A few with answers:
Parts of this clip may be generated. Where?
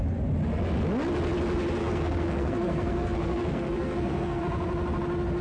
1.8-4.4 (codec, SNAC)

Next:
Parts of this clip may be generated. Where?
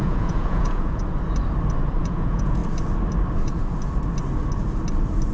0.0-1.0 (vocoder, Vocos); 2.0-2.6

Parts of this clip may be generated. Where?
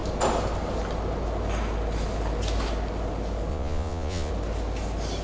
3.5-4.3 (vocoder, Vocos)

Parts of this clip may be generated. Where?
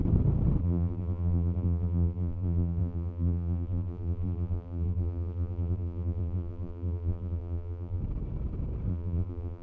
0.6-8.0 (vocoder, BigVGAN v2); 8.9-9.6